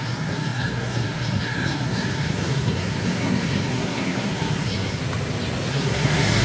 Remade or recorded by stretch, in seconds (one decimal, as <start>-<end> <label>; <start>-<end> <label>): 0.0-5.0 remade; 5.0-5.7 recorded; 5.7-6.4 remade